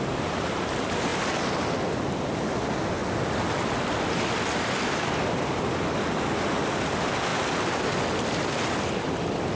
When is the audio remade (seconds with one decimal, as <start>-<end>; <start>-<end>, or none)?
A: 3.0-4.3; 7.3-7.8